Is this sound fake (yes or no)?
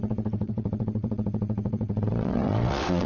yes